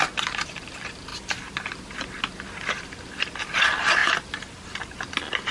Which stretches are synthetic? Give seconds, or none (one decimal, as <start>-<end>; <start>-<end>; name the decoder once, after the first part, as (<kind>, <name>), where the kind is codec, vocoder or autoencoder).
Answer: none